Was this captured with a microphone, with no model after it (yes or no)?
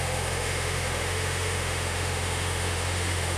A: no